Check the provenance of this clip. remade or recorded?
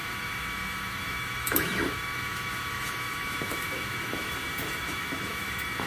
remade